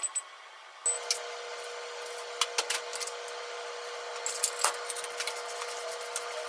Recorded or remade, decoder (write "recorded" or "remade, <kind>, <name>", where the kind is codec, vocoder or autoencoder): recorded